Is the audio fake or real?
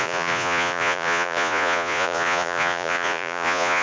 fake